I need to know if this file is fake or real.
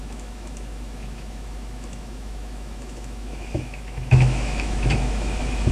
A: fake